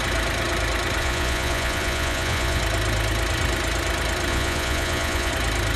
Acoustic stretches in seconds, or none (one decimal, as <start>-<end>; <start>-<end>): 0.0-1.0; 2.6-4.3; 5.3-5.8